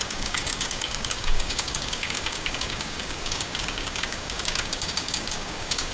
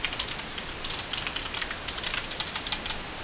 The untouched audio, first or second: second